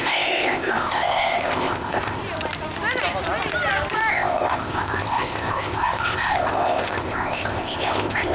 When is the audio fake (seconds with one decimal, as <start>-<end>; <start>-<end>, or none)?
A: 0.0-2.2; 4.1-8.3